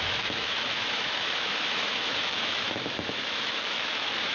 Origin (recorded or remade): remade